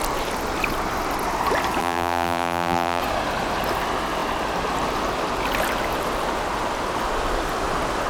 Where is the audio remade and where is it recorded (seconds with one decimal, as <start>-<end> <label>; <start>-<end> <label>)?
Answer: 0.0-1.8 recorded; 1.8-3.0 remade; 3.0-8.1 recorded